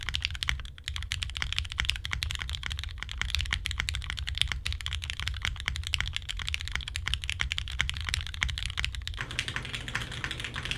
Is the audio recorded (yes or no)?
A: yes